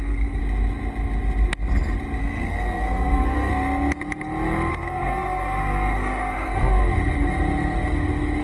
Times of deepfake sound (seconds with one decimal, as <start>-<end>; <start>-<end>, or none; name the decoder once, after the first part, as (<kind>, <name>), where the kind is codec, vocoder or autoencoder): 0.0-0.4 (codec, SNAC); 2.2-3.5; 4.7-6.8